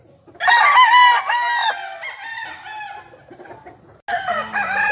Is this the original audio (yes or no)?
yes